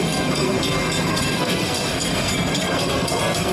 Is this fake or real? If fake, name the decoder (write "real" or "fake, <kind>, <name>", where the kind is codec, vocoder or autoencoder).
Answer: fake, codec, SNAC